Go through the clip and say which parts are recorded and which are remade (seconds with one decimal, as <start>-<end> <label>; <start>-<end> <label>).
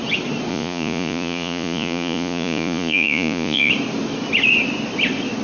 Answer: 0.0-0.5 recorded; 0.5-3.7 remade; 3.7-5.4 recorded